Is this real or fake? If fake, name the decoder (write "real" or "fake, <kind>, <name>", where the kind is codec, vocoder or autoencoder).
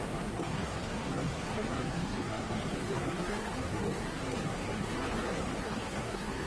fake, codec, SNAC